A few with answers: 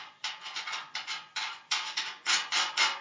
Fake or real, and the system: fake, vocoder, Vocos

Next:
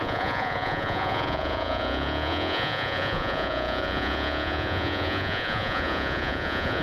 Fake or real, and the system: fake, vocoder, Vocos